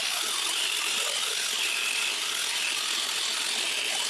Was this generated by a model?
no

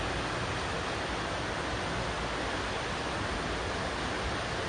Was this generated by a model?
no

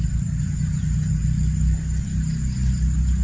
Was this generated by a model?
no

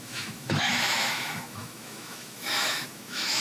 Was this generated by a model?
yes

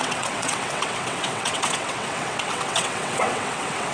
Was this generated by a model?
yes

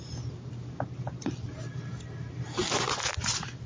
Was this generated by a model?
no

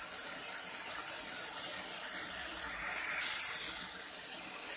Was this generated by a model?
no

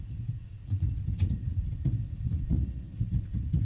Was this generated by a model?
yes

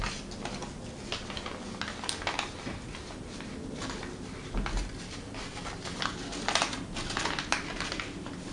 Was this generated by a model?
no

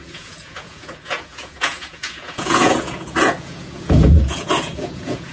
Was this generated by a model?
yes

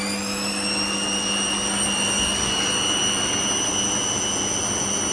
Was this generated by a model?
no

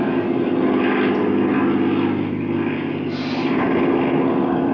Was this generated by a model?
no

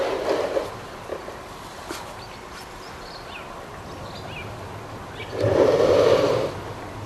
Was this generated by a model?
no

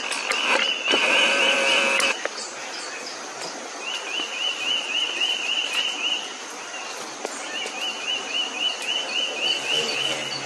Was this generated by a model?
no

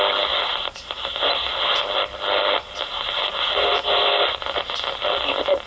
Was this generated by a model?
no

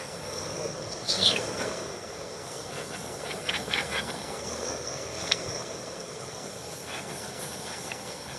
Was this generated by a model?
yes